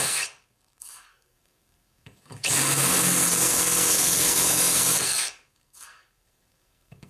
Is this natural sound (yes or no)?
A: no